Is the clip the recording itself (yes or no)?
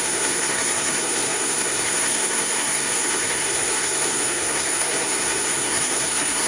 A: no